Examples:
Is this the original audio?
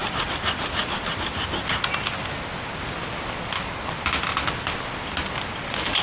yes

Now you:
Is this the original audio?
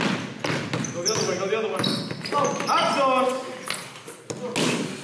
yes